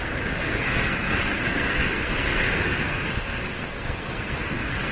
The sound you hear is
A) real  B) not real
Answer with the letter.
B